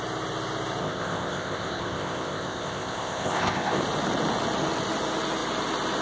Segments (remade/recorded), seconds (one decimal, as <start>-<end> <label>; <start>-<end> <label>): 0.0-0.8 recorded; 0.8-3.8 remade; 3.8-6.0 recorded